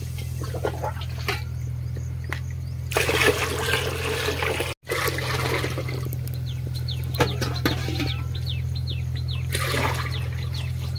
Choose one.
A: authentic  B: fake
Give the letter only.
A